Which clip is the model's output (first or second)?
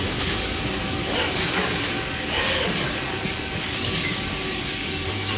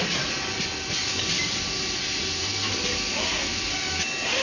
first